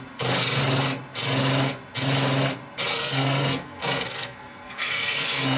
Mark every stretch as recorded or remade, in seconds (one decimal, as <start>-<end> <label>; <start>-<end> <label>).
0.0-2.9 recorded; 2.9-5.6 remade